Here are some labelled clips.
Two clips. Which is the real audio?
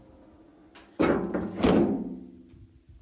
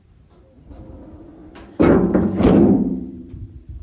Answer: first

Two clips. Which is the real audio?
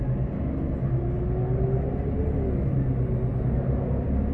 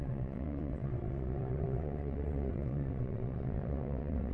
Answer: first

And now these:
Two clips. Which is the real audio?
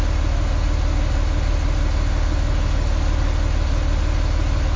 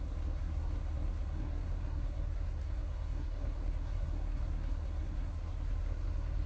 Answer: first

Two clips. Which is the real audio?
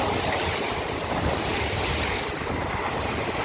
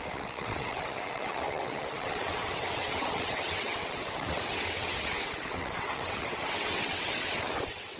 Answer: first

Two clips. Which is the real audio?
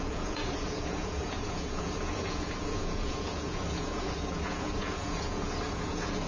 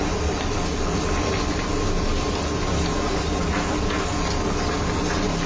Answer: second